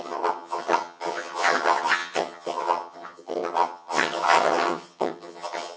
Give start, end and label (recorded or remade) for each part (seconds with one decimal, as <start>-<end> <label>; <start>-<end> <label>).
0.0-5.8 remade